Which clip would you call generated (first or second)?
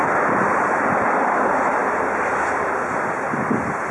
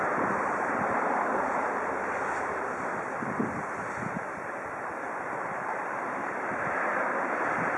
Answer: second